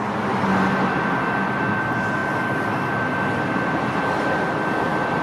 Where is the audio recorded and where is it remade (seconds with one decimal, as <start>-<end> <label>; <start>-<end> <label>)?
0.0-5.2 recorded